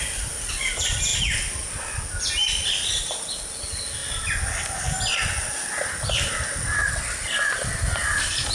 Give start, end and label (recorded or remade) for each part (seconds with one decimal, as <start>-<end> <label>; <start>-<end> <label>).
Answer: 0.0-8.5 recorded